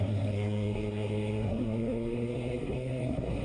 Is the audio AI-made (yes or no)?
yes